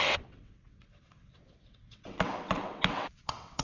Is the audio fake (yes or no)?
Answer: yes